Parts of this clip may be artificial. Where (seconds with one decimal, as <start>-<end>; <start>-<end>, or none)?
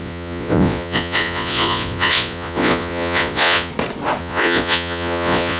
0.0-3.7; 4.2-5.6